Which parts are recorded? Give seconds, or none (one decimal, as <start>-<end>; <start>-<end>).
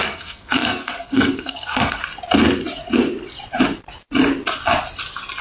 2.0-5.4